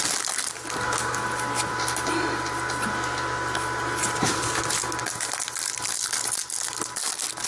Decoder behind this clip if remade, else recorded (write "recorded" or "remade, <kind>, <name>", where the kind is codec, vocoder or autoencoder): recorded